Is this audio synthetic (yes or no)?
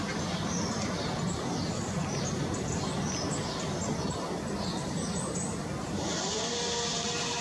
no